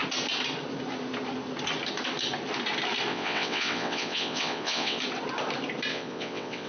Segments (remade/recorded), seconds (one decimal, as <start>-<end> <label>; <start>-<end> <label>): 0.0-3.1 recorded; 3.1-5.0 remade; 5.0-5.9 recorded; 5.9-6.7 remade